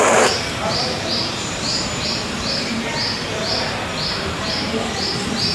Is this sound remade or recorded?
remade